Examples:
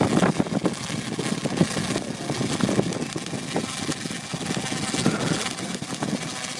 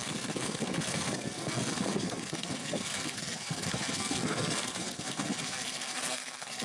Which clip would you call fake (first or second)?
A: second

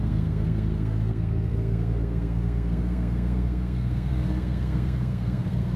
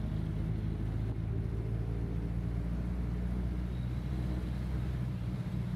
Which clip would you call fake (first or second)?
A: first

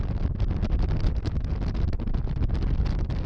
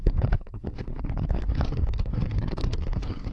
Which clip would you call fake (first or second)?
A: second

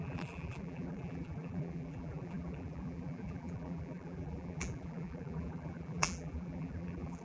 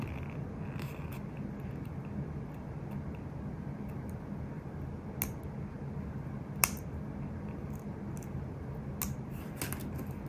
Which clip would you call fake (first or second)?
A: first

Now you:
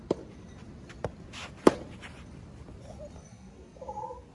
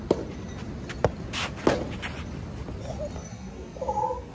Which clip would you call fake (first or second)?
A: first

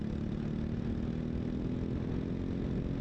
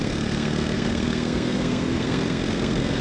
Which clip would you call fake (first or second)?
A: second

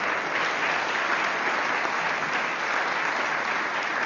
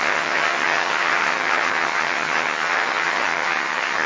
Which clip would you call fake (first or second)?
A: second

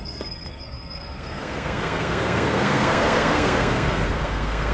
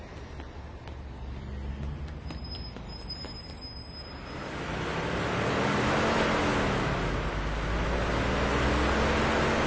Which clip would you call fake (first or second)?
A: first